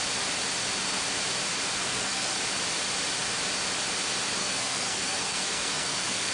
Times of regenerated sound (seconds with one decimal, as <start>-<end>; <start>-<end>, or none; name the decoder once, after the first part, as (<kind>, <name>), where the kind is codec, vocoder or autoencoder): 1.8-2.4 (codec, SNAC); 4.4-6.3